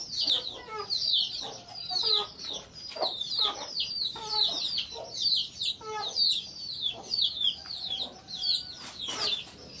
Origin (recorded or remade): recorded